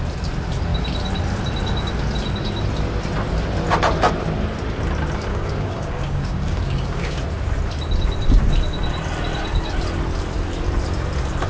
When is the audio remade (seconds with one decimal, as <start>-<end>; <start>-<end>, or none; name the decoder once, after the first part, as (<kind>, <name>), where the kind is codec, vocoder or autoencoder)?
5.3-7.2 (codec, DAC)